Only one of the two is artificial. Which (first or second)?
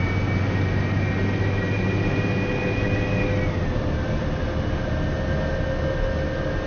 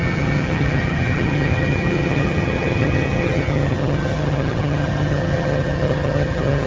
second